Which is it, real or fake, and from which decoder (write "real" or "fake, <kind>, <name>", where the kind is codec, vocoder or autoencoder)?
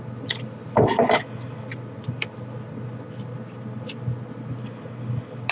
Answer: real